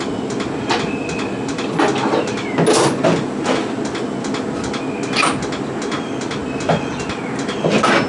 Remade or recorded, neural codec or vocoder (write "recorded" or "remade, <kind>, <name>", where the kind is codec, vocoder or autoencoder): recorded